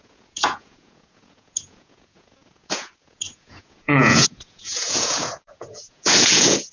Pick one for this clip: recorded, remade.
remade